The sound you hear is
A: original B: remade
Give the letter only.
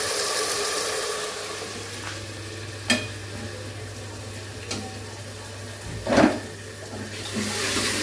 A